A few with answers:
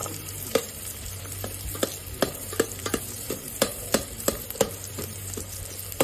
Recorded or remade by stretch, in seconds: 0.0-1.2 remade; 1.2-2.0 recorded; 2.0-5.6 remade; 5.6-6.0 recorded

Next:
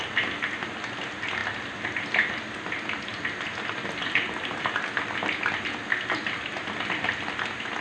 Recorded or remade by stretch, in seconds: 0.0-7.8 recorded

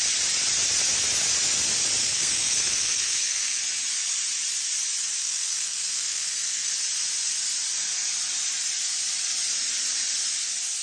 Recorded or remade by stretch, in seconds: 0.0-2.0 recorded; 2.0-3.6 remade; 3.6-5.2 recorded; 5.2-6.7 remade; 6.7-10.8 recorded

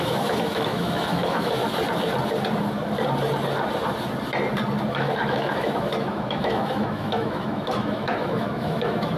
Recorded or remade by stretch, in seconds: 0.0-1.6 remade; 1.6-4.9 recorded; 4.9-9.2 remade

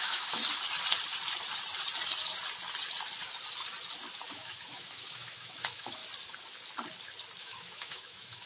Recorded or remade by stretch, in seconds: 0.0-0.4 remade; 0.4-4.3 recorded; 4.3-6.0 remade; 6.0-7.4 recorded; 7.4-8.5 remade